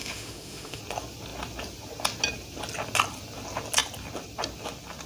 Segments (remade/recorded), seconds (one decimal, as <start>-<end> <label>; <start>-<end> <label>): 0.0-0.8 remade; 0.8-5.1 recorded

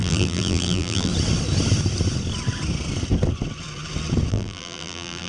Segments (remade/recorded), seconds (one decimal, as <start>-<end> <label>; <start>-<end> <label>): 0.0-1.1 remade; 1.1-4.3 recorded; 4.3-5.3 remade

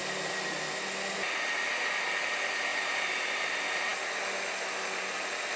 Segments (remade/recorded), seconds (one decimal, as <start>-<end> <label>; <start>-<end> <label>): 0.0-2.7 recorded; 2.7-3.3 remade; 3.3-5.6 recorded

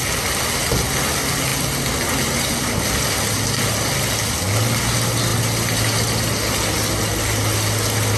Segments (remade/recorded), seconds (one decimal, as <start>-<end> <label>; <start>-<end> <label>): 0.0-8.2 recorded

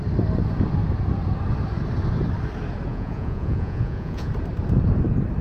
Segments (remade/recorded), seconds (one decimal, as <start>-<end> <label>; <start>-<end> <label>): 0.0-2.9 recorded; 2.9-4.3 remade; 4.3-5.4 recorded

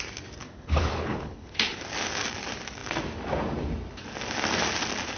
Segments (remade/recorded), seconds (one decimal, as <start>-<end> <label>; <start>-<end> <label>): 0.0-0.4 recorded; 0.4-1.8 remade; 1.8-5.2 recorded